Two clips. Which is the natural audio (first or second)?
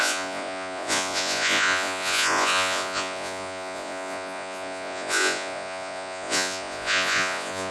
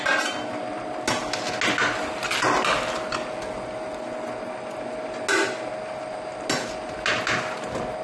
second